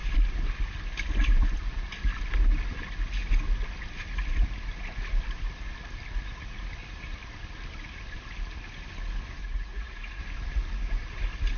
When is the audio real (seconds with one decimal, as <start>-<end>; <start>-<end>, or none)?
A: 0.0-9.4; 10.2-11.6